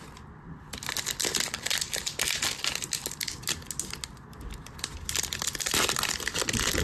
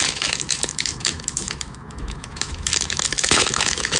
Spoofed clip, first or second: second